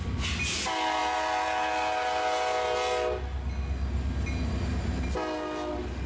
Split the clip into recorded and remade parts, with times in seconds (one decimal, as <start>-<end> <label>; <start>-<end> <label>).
0.0-6.1 recorded